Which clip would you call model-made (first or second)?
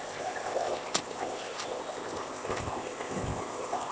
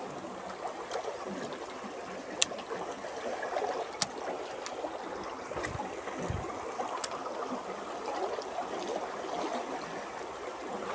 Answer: first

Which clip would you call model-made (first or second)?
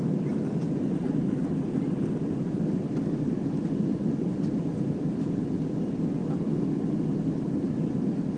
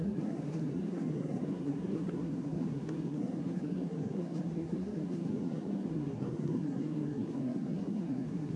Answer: second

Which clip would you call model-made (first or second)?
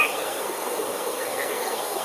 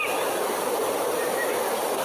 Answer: first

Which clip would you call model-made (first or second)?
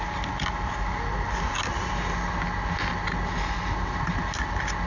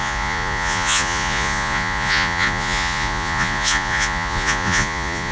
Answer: second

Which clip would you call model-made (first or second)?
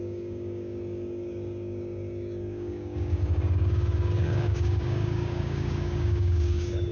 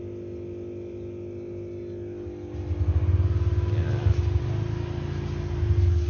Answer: first